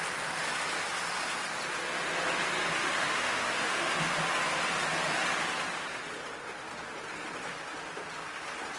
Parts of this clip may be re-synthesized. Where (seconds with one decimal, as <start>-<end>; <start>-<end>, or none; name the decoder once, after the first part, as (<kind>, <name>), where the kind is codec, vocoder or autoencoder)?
2.8-3.9 (autoencoder, DAC-VAE)